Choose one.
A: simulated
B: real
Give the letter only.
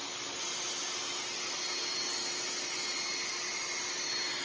B